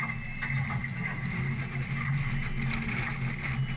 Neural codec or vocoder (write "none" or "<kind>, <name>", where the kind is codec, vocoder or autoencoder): none